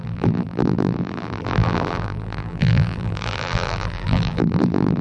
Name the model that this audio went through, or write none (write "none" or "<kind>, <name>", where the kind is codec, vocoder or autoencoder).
vocoder, BigVGAN v2